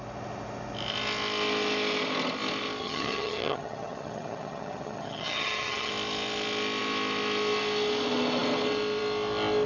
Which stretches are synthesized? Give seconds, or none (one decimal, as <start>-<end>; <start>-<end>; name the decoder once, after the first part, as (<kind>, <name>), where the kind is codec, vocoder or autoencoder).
2.8-5.9 (vocoder, HiFi-GAN)